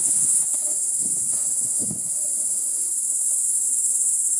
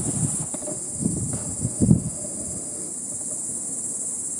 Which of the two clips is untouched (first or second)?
second